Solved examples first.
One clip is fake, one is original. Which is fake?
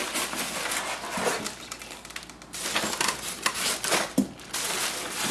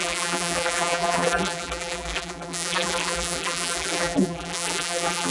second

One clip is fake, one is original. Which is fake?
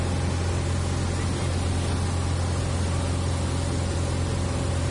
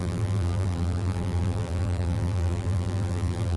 second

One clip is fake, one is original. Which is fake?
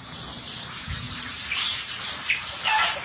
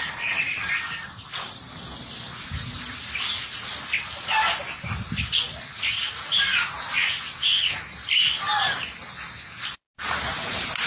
first